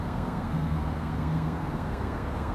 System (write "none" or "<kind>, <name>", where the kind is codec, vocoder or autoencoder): codec, SNAC